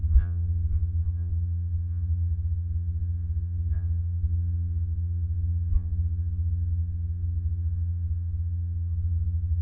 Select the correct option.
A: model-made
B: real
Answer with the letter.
A